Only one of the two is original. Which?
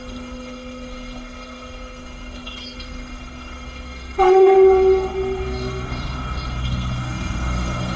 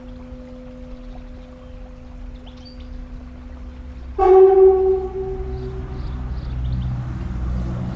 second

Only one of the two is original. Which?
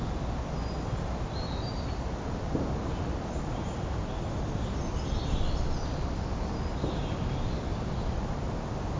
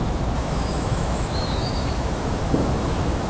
first